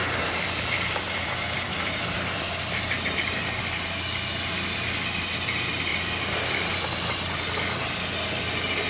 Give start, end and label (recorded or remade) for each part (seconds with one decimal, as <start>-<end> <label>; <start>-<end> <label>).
0.0-3.6 remade; 3.6-5.9 recorded; 5.9-7.1 remade; 7.1-8.9 recorded